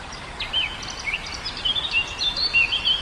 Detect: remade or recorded remade